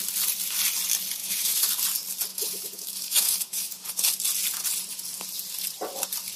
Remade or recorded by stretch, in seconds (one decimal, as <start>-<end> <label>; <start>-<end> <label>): 0.0-1.2 recorded; 1.2-1.7 remade; 1.7-2.3 recorded; 2.3-3.9 remade; 3.9-6.4 recorded